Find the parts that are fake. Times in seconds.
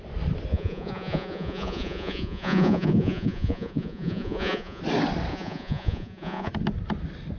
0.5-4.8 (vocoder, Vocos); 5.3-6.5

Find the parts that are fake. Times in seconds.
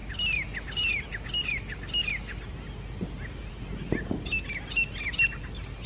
none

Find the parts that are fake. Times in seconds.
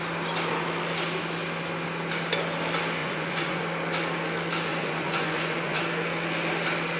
3.0-3.6 (vocoder, Vocos); 4.7-5.8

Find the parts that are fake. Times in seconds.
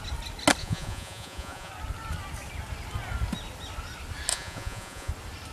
0.6-1.7 (vocoder, Vocos); 4.3-5.1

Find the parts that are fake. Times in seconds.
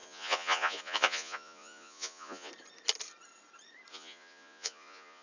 0.0-2.5 (vocoder, Vocos); 3.9-5.2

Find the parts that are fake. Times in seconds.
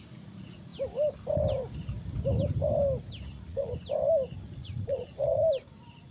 0.0-0.7 (vocoder, Vocos); 3.2-3.7; 4.6-5.4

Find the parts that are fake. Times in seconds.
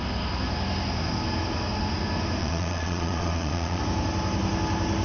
2.4-3.8 (vocoder, Vocos)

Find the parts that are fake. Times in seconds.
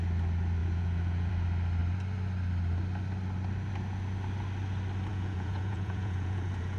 0.6-1.3 (vocoder, Vocos); 5.1-6.8